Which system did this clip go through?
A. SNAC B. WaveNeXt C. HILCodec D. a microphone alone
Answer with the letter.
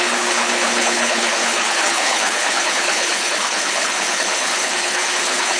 C